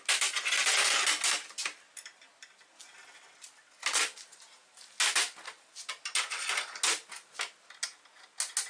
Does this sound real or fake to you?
real